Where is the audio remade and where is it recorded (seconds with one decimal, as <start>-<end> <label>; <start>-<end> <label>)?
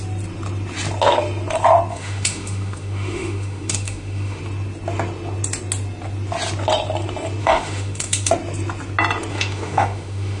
0.0-1.9 recorded; 1.9-4.4 remade; 4.4-7.4 recorded; 7.4-8.3 remade; 8.3-9.3 recorded; 9.3-10.4 remade